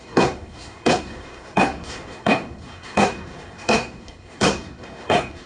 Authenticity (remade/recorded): remade